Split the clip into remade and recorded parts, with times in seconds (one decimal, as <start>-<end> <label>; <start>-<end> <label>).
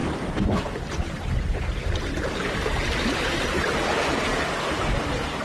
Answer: 0.0-3.2 remade; 3.2-5.4 recorded